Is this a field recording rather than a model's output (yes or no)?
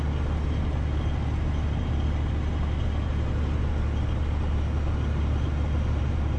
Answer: yes